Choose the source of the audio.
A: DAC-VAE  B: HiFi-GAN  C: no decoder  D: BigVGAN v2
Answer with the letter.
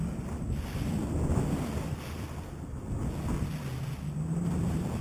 C